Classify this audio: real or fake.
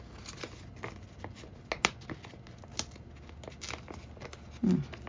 real